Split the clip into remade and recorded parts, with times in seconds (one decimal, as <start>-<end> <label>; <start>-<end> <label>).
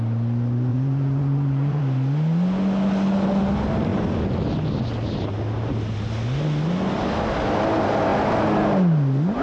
0.0-0.7 recorded; 0.7-1.8 remade; 1.8-9.4 recorded